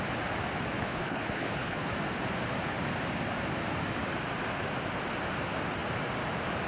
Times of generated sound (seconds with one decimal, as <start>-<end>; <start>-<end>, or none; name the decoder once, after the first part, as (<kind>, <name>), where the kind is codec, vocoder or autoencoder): 0.8-1.9 (codec, HILCodec)